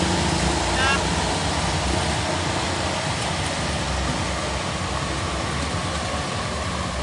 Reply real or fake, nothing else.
real